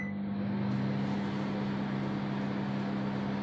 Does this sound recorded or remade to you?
recorded